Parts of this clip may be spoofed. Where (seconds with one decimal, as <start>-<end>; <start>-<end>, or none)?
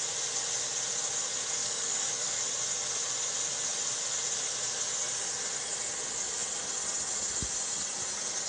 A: 1.6-2.4